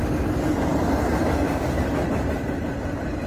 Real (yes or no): yes